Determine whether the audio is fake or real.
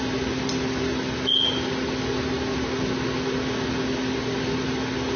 real